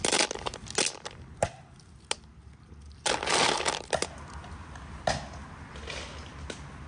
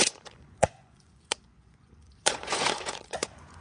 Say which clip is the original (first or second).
first